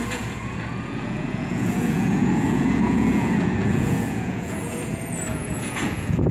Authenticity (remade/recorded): remade